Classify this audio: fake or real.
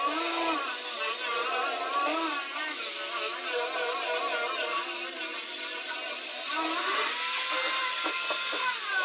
real